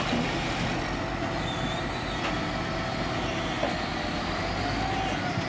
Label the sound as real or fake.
real